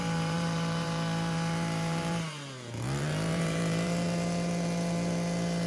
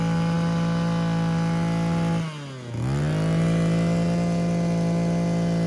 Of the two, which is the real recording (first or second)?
second